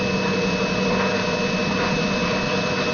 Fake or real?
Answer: real